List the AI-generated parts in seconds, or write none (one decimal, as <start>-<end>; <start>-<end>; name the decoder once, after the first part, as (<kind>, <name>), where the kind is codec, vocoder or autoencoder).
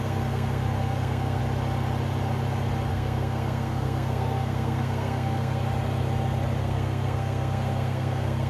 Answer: 0.0-1.4 (codec, SNAC); 2.9-5.6; 6.6-8.5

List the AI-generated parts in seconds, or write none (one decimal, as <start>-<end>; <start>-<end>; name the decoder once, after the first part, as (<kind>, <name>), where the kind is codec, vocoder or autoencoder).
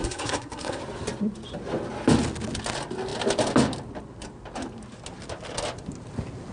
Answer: 0.0-0.8 (codec, SNAC)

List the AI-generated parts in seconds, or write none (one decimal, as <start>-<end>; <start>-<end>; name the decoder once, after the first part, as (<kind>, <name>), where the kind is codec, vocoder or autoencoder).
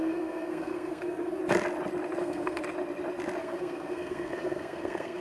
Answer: 0.0-1.4 (codec, SNAC); 2.2-2.6; 3.4-5.2